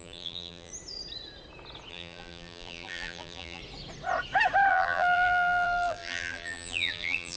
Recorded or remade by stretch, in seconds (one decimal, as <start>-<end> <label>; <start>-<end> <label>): 0.0-0.7 remade; 0.7-1.9 recorded; 1.9-3.6 remade; 3.6-4.7 recorded; 4.7-7.4 remade